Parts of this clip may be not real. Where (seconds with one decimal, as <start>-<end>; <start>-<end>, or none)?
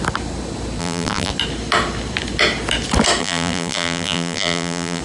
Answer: 0.8-1.3; 3.2-5.0